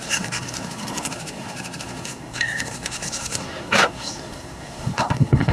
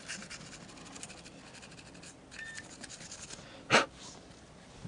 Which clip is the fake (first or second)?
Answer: first